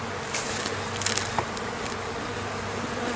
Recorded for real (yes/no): yes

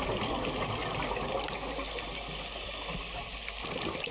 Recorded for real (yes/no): yes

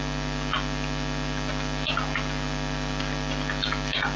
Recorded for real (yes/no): yes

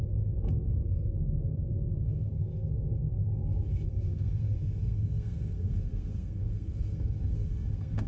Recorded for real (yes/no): no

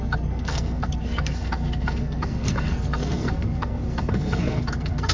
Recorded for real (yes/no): no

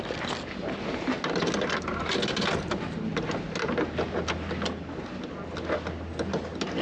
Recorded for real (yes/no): yes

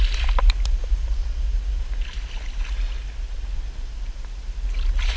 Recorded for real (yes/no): yes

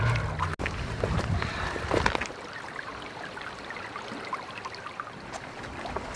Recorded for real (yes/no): yes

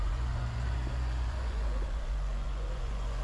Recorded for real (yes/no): no